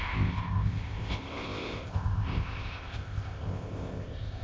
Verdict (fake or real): fake